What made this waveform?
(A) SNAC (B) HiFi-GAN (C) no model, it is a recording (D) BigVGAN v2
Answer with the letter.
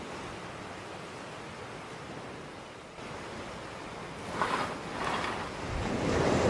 C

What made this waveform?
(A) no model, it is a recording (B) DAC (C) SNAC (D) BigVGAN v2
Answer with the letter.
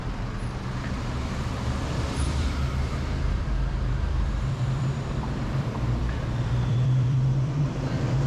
D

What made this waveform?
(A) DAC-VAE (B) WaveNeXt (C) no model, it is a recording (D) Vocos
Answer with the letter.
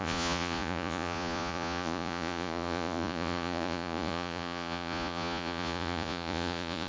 D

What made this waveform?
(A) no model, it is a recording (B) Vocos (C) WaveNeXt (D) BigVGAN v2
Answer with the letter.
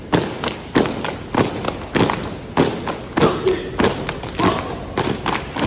A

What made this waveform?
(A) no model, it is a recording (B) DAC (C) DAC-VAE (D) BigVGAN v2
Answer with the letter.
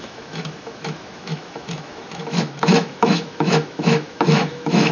C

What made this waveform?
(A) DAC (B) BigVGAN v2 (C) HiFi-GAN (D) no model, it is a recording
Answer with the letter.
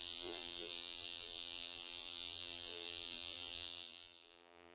B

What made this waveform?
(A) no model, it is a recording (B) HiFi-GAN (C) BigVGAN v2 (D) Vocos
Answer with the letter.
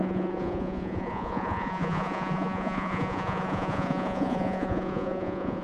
D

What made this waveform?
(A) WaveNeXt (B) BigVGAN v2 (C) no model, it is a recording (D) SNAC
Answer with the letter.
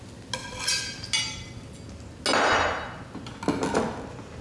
C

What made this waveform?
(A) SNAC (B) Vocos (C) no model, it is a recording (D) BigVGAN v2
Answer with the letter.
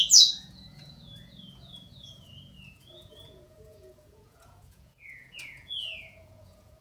B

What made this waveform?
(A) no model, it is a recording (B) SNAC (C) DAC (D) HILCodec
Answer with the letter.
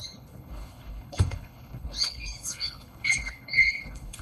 D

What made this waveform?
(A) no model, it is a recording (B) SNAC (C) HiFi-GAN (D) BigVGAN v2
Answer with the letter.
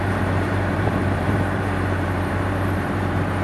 D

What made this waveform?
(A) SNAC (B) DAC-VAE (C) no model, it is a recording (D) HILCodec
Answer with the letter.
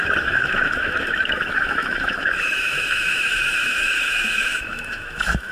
B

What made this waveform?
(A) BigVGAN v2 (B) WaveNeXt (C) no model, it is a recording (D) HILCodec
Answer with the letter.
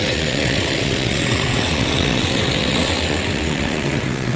B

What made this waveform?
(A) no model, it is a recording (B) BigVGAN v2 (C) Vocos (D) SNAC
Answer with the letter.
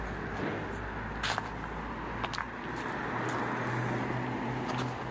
A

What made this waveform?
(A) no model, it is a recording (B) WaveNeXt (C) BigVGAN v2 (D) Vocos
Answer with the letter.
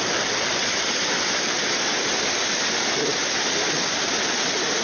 A